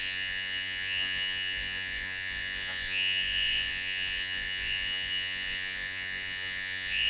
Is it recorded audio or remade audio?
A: remade